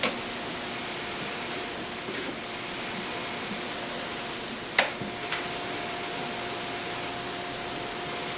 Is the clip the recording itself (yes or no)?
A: yes